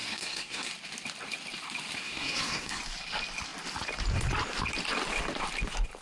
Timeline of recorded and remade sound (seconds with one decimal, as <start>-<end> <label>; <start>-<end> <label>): 0.0-0.7 remade; 0.7-2.0 recorded; 2.0-2.8 remade; 2.8-6.0 recorded